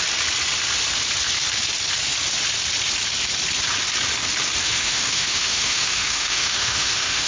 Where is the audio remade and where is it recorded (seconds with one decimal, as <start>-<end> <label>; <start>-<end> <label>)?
0.0-4.6 recorded; 4.6-7.3 remade